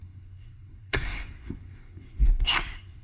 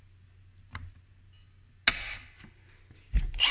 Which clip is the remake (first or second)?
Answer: first